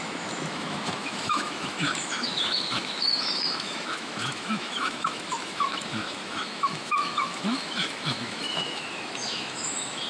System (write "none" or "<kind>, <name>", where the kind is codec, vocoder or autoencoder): autoencoder, DAC-VAE